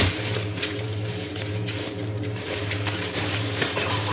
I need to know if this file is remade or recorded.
remade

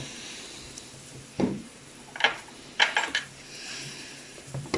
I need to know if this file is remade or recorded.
remade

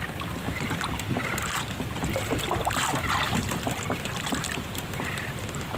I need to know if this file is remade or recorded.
remade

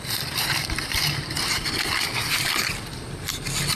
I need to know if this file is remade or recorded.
remade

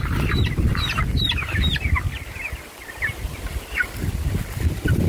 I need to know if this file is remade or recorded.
recorded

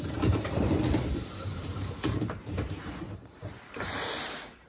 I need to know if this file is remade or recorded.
remade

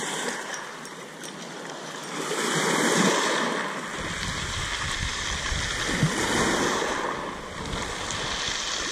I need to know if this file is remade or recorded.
recorded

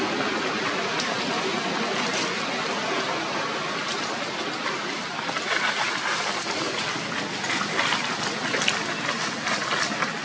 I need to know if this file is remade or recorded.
recorded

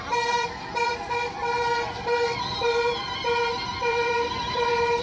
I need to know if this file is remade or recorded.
remade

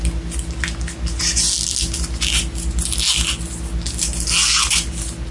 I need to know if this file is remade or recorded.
recorded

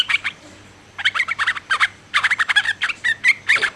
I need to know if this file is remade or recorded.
remade